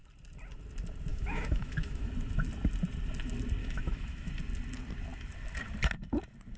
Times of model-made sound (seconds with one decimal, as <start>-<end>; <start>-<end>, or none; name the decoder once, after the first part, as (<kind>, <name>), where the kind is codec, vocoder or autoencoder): 1.1-2.1 (autoencoder, DAC-VAE); 3.6-4.3